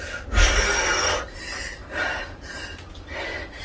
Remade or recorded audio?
recorded